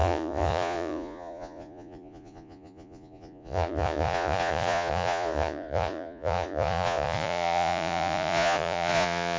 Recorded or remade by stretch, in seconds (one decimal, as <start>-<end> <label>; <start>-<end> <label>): 0.0-9.4 remade